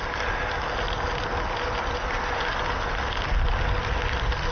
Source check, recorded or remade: recorded